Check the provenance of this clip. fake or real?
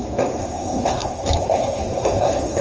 fake